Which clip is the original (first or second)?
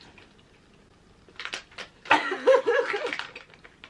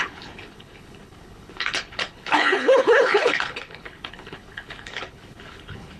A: first